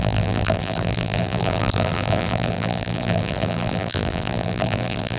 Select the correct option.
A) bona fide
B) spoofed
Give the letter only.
B